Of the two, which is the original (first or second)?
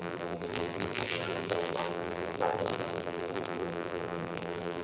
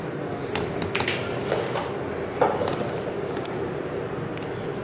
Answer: second